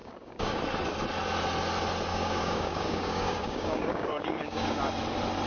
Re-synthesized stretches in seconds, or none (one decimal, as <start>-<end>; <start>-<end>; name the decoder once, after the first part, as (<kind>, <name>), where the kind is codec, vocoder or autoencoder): 0.0-0.6 (codec, DAC); 2.1-4.8